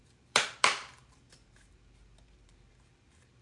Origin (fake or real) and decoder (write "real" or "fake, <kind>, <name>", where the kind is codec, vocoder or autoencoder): fake, vocoder, BigVGAN v2